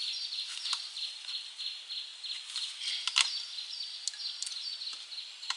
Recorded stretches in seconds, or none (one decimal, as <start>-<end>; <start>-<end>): 0.0-5.6